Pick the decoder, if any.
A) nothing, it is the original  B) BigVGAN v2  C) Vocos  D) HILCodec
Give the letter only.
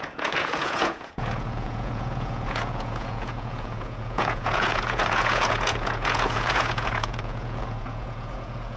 C